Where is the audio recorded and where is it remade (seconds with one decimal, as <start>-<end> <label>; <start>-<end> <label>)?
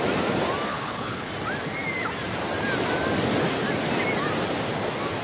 0.0-0.7 recorded; 0.7-1.3 remade; 1.3-5.2 recorded